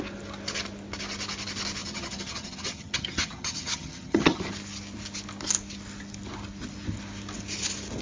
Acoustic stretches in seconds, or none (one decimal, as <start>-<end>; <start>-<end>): 0.0-1.8; 4.4-8.0